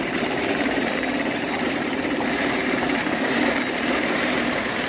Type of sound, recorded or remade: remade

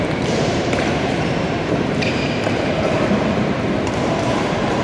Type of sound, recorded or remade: remade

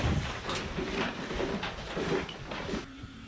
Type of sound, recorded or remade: remade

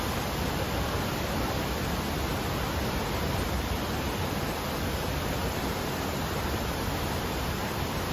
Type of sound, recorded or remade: remade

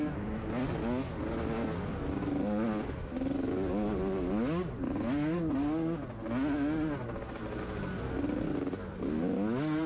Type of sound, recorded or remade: recorded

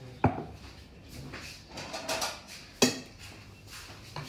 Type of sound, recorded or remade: recorded